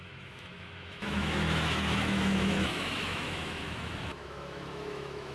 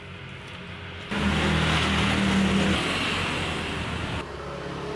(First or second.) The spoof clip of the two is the first